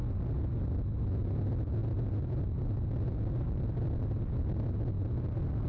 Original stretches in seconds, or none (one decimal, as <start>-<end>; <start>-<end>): 0.0-5.7